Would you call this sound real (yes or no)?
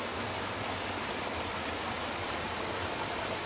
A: yes